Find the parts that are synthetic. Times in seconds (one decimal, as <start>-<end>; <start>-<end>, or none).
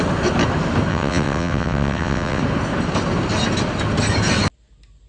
0.9-2.4